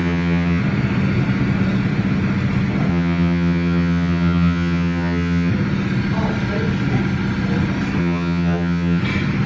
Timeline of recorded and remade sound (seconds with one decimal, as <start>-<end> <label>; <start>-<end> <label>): 0.0-0.6 remade; 0.6-2.9 recorded; 2.9-5.5 remade; 5.5-8.0 recorded; 8.0-9.0 remade; 9.0-9.5 recorded